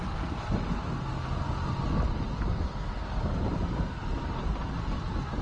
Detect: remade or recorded recorded